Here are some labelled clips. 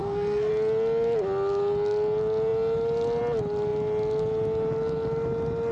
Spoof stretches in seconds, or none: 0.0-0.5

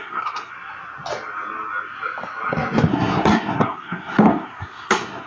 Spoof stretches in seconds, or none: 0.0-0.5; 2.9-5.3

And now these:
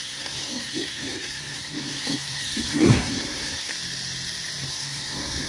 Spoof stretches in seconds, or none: 0.0-3.7; 4.7-5.5